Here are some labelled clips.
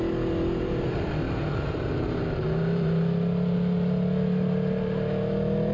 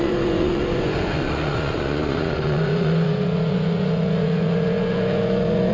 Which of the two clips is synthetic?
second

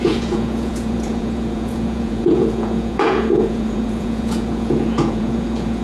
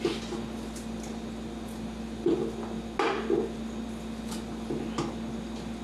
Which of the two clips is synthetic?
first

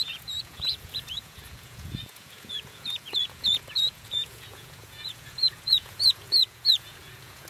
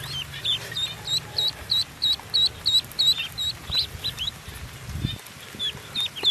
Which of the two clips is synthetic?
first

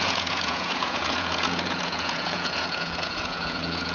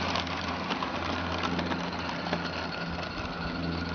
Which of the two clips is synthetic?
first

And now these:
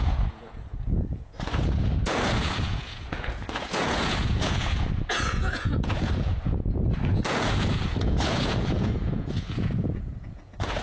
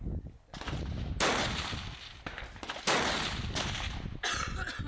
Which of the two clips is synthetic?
first